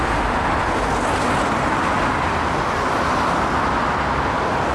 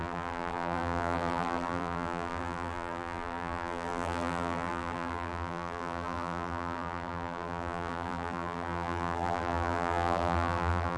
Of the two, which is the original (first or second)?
first